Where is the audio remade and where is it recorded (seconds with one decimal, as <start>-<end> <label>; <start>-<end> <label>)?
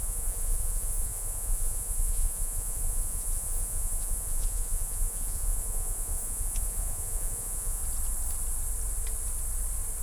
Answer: 0.0-7.8 remade; 7.8-10.0 recorded